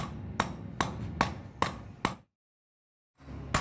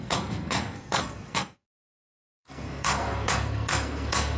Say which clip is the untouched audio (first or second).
first